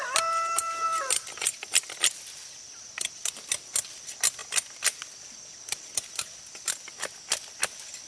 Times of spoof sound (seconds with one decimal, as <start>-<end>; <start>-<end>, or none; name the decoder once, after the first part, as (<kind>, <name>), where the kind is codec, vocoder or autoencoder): none